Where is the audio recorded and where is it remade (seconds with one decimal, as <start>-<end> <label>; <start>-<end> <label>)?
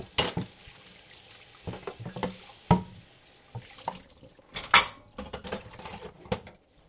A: 0.0-6.9 recorded